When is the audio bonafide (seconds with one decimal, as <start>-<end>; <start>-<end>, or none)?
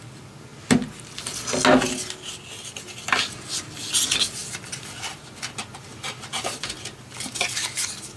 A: 0.0-4.4